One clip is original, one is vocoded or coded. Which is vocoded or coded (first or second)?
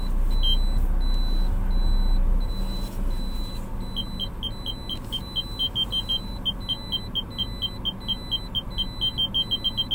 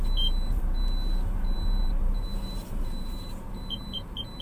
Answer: second